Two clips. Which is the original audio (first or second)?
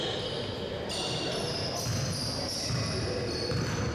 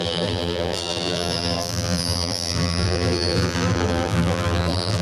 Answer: first